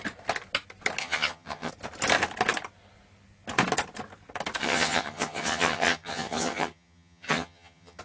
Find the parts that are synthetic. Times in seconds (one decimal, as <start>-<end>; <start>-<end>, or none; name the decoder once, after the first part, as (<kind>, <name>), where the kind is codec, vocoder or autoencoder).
1.0-1.7 (vocoder, HiFi-GAN); 4.6-8.0